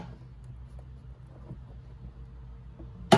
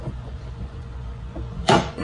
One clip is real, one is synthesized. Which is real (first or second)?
first